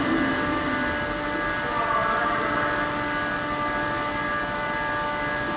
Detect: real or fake real